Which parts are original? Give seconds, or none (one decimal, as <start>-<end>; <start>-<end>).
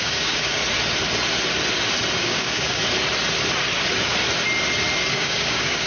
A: 0.6-2.2; 2.8-5.1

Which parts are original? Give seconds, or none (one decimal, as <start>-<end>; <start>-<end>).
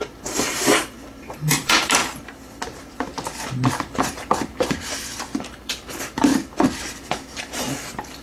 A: none